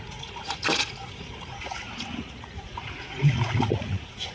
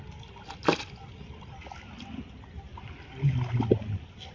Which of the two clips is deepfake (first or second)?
first